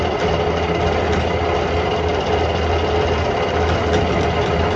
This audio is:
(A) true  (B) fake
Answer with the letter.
A